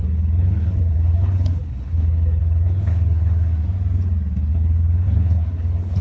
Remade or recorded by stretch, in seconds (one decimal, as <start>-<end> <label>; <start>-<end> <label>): 0.0-3.5 remade; 3.5-4.5 recorded; 4.5-6.0 remade